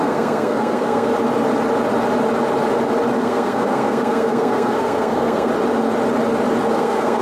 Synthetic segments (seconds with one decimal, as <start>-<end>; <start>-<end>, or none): 0.0-1.1; 3.2-5.5; 6.7-7.2